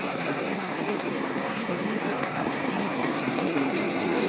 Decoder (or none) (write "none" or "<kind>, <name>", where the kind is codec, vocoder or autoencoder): codec, SNAC